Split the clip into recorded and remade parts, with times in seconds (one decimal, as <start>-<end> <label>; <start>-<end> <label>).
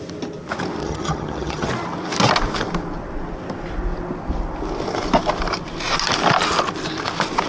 0.0-0.8 recorded; 0.8-1.7 remade; 1.7-7.5 recorded